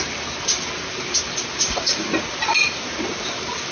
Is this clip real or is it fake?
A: real